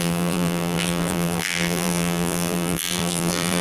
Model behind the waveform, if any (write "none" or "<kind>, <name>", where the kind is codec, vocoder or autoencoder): vocoder, BigVGAN v2